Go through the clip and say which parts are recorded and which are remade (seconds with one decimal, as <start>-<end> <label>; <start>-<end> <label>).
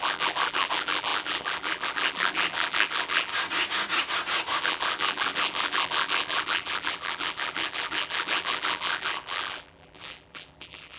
0.0-3.3 remade; 3.3-4.6 recorded; 4.6-11.0 remade